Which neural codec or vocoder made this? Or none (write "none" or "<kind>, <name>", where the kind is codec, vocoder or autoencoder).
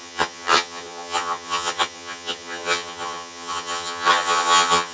vocoder, HiFi-GAN